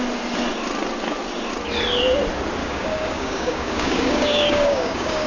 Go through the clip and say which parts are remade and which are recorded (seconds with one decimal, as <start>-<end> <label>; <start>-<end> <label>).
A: 0.0-2.6 recorded; 2.6-5.3 remade

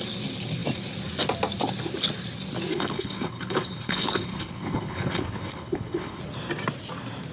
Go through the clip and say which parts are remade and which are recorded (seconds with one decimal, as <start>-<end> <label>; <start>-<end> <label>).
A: 0.0-2.7 recorded; 2.7-6.2 remade; 6.2-7.3 recorded